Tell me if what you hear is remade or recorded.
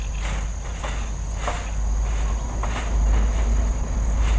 recorded